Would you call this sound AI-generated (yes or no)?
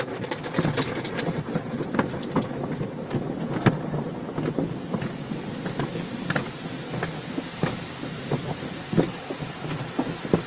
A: no